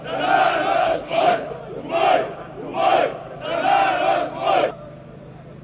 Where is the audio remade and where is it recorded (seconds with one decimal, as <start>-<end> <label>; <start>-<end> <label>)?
0.0-0.8 recorded; 0.8-1.5 remade; 1.5-5.6 recorded